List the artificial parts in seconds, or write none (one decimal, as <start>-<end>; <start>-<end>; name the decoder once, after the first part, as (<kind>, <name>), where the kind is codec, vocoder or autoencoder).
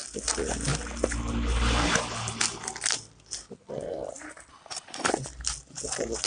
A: 4.5-5.1 (codec, HILCodec)